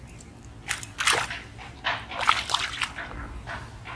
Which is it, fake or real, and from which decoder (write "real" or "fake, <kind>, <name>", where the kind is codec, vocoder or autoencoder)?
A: real